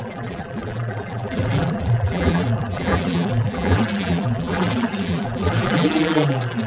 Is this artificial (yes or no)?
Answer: yes